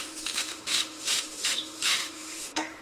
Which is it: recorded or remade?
remade